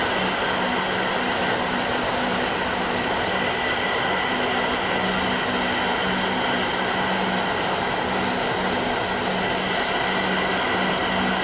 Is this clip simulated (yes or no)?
no